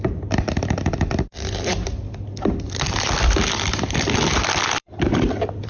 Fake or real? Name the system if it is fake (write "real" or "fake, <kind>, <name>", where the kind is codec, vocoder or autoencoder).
fake, vocoder, BigVGAN v2